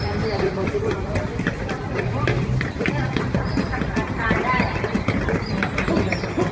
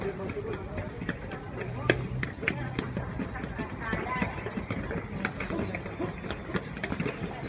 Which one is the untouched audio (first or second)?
second